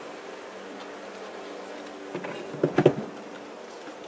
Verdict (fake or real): real